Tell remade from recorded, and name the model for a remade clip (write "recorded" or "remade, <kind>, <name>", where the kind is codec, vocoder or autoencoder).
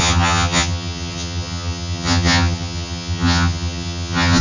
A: remade, vocoder, HiFi-GAN